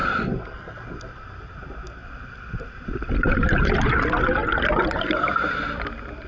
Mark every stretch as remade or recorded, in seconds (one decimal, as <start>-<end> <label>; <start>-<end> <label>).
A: 0.0-0.6 remade; 0.6-2.0 recorded; 2.0-3.3 remade; 3.3-6.3 recorded